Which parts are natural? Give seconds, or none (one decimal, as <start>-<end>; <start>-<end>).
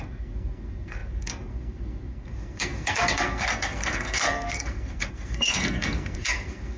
none